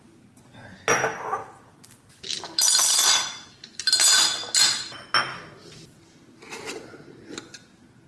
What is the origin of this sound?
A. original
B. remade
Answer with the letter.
A